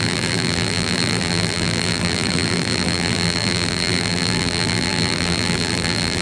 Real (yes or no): no